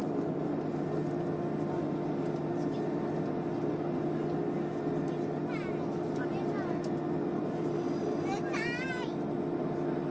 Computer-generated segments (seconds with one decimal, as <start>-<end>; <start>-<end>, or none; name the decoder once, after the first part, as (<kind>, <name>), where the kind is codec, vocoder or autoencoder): none